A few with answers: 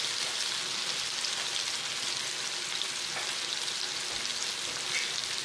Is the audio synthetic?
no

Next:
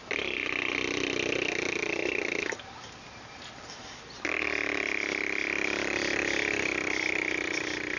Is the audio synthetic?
no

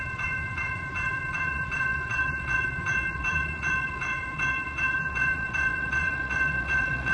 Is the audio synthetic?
yes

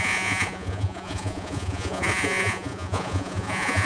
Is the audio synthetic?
yes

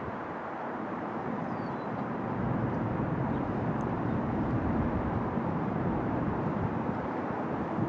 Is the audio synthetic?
yes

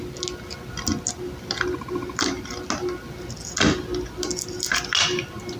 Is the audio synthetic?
no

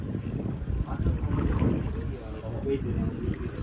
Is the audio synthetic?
no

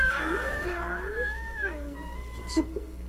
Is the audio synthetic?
yes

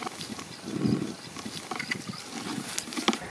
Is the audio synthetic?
no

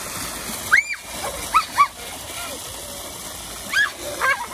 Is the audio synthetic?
no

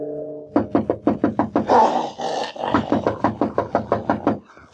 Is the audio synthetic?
no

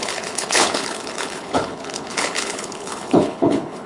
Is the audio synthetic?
yes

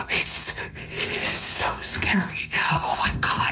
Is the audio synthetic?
yes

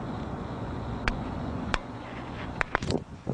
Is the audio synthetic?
yes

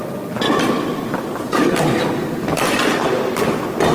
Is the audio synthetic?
no